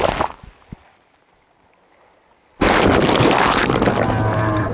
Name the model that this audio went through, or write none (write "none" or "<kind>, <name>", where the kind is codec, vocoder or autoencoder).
none